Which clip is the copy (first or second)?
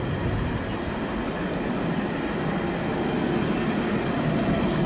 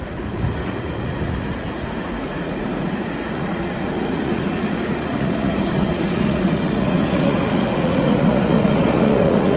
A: second